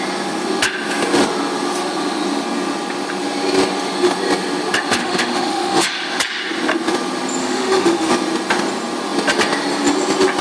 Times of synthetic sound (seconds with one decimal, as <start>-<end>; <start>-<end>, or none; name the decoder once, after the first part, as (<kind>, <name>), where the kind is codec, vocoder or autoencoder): 5.0-5.9 (autoencoder, DAC-VAE); 7.4-8.1

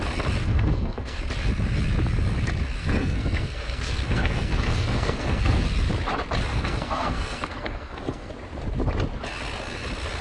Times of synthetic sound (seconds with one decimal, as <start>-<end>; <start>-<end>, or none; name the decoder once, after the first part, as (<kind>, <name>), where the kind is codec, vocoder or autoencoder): 0.4-1.2 (codec, SNAC); 2.8-5.6; 6.5-8.3